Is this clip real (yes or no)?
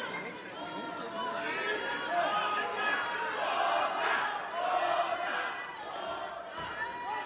yes